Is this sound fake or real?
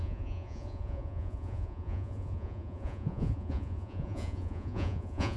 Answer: fake